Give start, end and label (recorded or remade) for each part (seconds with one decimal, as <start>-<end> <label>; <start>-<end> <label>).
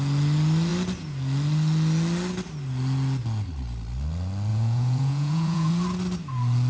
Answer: 0.0-4.5 recorded; 4.5-5.7 remade; 5.7-6.7 recorded